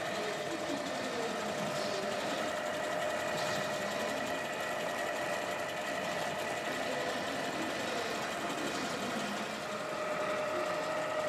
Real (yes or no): yes